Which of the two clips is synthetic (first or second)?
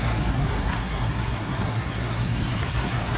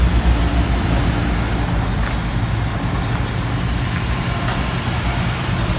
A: first